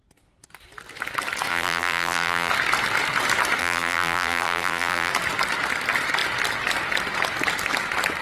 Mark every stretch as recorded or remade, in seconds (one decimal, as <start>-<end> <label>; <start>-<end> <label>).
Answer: 0.0-1.5 recorded; 1.5-2.5 remade; 2.5-3.6 recorded; 3.6-5.1 remade; 5.1-8.2 recorded